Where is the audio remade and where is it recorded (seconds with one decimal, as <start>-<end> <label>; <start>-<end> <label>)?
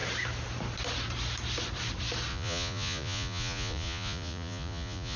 0.0-2.3 recorded; 2.3-5.2 remade